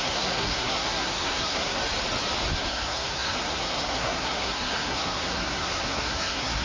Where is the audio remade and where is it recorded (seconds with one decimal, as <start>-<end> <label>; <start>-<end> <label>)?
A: 0.0-1.8 remade; 1.8-2.6 recorded; 2.6-6.6 remade